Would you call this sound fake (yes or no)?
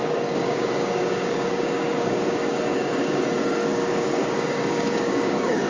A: yes